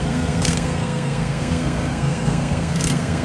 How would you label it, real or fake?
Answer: fake